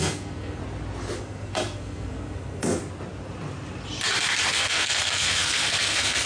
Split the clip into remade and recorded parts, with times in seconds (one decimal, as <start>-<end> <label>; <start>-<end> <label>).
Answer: 0.0-0.6 remade; 0.6-1.2 recorded; 1.2-2.8 remade; 2.8-4.5 recorded; 4.5-6.3 remade